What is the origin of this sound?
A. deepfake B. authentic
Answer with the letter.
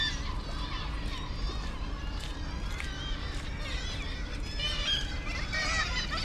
A